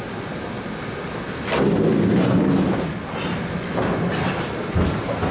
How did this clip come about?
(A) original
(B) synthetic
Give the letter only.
A